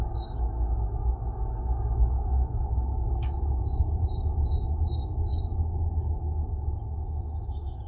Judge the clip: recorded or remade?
remade